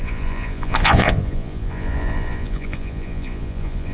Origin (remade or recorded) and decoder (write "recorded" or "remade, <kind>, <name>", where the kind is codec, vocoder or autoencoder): remade, vocoder, Vocos